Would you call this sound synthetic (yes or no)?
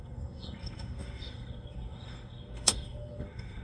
yes